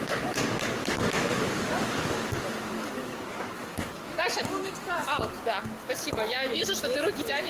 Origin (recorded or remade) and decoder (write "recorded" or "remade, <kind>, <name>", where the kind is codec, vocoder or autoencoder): remade, codec, DAC